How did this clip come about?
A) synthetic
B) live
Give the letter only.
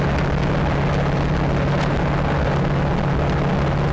B